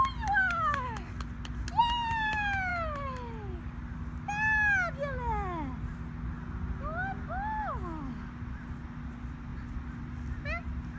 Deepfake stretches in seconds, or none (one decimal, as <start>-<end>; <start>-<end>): none